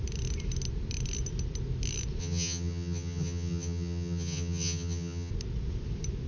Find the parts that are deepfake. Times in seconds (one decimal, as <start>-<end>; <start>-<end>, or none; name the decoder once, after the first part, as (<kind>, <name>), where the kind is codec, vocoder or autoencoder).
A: 2.2-5.3 (vocoder, HiFi-GAN)